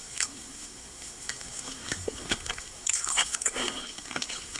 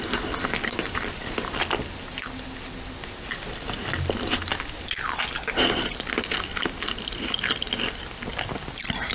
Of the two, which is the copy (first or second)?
first